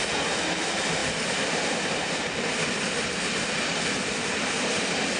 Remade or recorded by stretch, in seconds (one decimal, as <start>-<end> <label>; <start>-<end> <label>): 0.0-5.2 remade